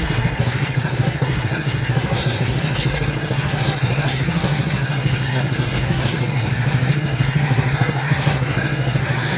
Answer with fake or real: fake